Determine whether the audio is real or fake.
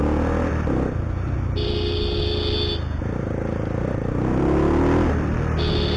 real